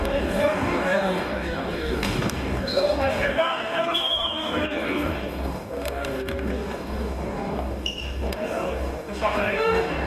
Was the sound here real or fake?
fake